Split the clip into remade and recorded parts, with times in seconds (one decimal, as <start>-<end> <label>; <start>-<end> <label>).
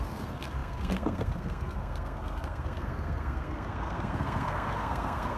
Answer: 0.0-5.4 remade